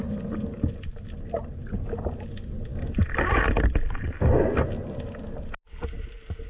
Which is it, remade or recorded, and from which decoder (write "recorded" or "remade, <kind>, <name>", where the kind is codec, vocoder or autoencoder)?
recorded